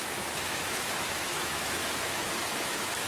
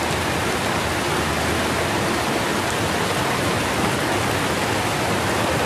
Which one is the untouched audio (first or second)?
second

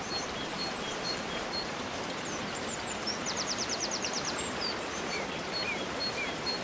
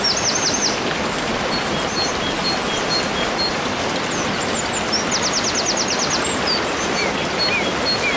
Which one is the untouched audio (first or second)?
second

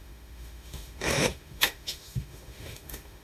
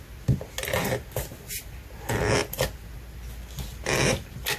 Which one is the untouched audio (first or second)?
second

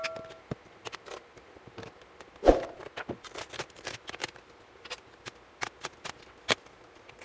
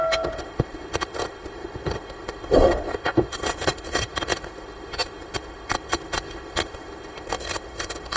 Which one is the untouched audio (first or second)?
first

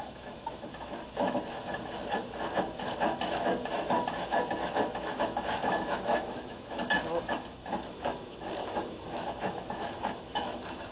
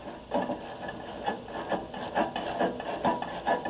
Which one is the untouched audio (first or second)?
second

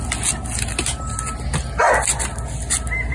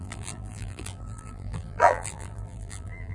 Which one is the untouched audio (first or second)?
first